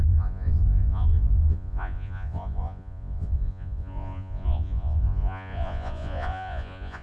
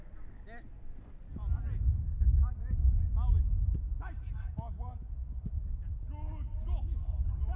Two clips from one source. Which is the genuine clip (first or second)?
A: second